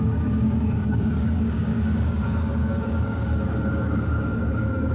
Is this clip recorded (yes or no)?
no